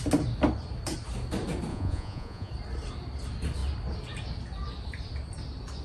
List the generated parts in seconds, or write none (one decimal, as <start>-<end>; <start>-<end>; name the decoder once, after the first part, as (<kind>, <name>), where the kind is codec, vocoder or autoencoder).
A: 1.7-2.5 (vocoder, Vocos)